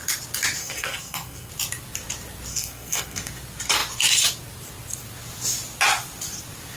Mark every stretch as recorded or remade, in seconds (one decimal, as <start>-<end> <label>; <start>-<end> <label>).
0.0-0.6 recorded; 0.6-1.5 remade; 1.5-2.5 recorded; 2.5-3.3 remade; 3.3-6.8 recorded